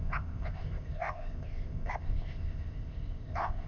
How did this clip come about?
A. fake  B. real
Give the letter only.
A